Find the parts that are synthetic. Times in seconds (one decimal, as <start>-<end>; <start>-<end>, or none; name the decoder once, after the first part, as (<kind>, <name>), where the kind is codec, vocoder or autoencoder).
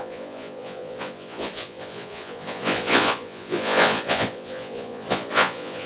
0.0-5.9 (vocoder, Vocos)